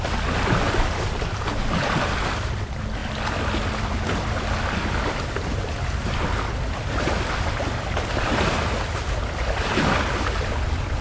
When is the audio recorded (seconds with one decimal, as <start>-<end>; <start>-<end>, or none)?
0.0-11.0